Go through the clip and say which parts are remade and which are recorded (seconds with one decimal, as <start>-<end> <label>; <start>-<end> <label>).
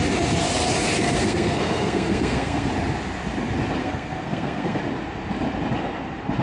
0.0-1.0 recorded; 1.0-2.7 remade; 2.7-3.8 recorded; 3.8-4.8 remade; 4.8-6.4 recorded